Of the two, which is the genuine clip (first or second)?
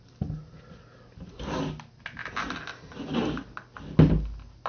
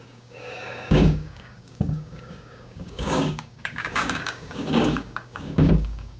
first